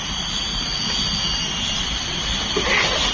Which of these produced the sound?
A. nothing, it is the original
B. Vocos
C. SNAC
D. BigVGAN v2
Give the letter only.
A